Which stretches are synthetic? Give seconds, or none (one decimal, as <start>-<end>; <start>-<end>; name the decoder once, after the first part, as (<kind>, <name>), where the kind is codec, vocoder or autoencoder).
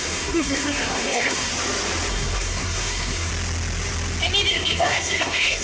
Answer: 0.0-1.5 (codec, SNAC); 2.1-3.3; 4.5-5.6